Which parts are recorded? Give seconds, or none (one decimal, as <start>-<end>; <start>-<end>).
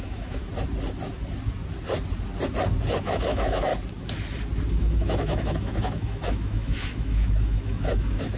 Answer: 0.4-3.0; 3.7-4.7